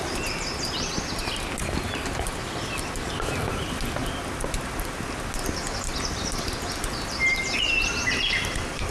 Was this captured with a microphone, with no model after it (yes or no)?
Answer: yes